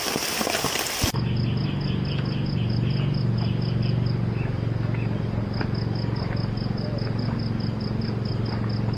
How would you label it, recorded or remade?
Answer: recorded